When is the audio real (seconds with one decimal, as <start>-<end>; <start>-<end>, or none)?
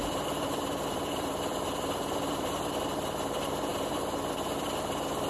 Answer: 2.8-5.3